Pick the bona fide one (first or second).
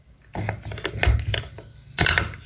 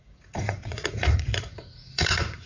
first